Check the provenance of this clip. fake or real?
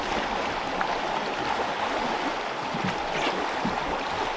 real